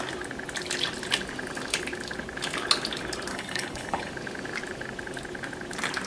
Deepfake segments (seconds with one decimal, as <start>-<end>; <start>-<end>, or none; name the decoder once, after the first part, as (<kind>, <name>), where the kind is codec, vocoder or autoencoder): 3.3-4.1 (codec, HILCodec)